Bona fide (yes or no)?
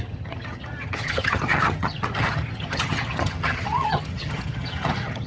no